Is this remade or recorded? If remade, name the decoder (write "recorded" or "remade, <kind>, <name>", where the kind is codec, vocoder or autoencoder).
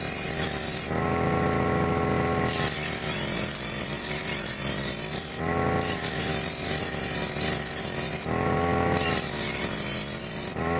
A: recorded